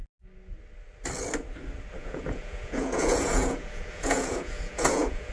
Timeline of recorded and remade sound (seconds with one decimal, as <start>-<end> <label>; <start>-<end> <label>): 0.0-2.0 recorded; 2.0-5.3 remade